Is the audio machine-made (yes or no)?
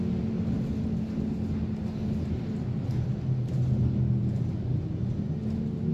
no